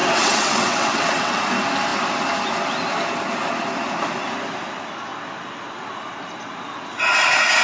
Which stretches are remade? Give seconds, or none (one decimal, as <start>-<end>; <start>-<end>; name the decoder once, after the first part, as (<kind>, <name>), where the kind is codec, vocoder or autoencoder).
0.0-1.4 (vocoder, WaveNeXt)